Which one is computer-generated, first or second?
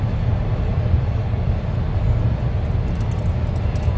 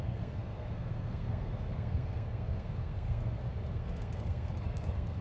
second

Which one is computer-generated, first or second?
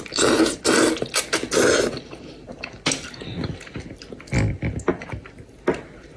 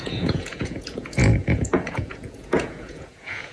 second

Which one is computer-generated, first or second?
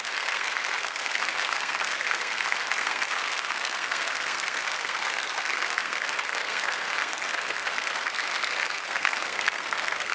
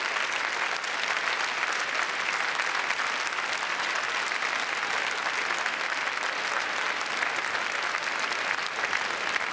first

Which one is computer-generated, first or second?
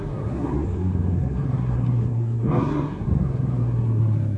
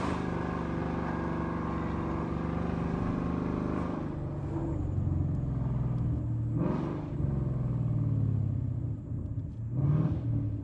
first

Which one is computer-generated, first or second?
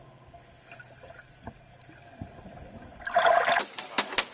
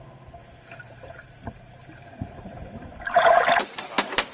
second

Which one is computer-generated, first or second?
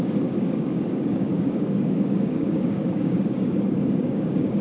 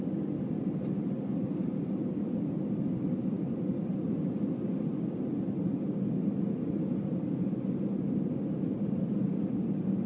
first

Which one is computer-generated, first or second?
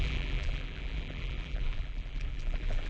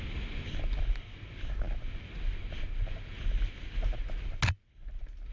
first